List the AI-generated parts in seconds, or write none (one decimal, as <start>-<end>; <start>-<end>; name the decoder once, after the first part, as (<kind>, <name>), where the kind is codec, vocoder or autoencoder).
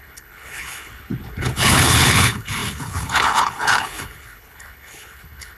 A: 0.0-5.6 (codec, HILCodec)